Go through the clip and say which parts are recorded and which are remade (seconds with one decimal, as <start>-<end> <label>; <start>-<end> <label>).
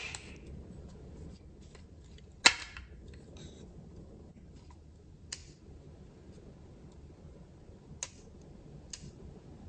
0.0-9.7 recorded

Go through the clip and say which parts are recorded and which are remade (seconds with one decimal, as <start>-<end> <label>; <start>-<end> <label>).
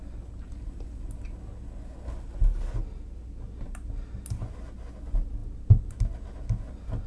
0.0-7.1 recorded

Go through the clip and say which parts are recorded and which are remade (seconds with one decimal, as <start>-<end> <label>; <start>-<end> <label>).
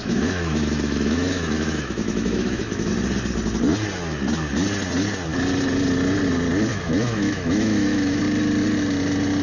0.0-2.9 remade; 2.9-6.7 recorded; 6.7-8.2 remade; 8.2-9.4 recorded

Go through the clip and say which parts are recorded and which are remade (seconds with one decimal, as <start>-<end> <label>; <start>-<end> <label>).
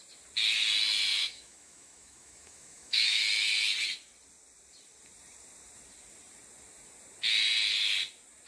0.0-1.1 recorded; 1.1-3.2 remade; 3.2-8.5 recorded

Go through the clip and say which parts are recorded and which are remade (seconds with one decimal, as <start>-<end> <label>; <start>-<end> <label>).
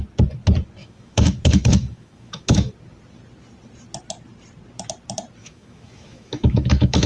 0.0-0.8 recorded; 0.8-2.7 remade; 2.7-5.4 recorded; 5.4-7.1 remade